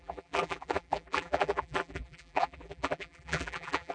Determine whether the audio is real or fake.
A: fake